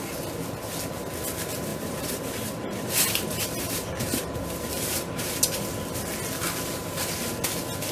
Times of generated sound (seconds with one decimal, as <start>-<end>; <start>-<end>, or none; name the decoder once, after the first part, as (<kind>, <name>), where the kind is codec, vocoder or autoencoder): 1.7-5.3 (vocoder, BigVGAN v2)